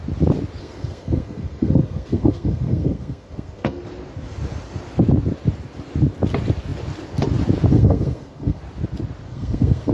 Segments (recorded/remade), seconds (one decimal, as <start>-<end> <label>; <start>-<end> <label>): 0.0-0.6 recorded; 0.6-3.8 remade; 3.8-7.7 recorded; 7.7-8.6 remade; 8.6-9.3 recorded; 9.3-9.9 remade